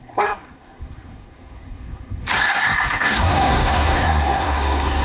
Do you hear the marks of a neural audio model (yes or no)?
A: yes